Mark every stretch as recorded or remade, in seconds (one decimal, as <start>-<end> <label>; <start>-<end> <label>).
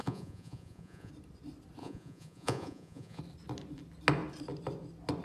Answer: 0.0-1.1 remade; 1.1-1.8 recorded; 1.8-3.2 remade; 3.2-5.2 recorded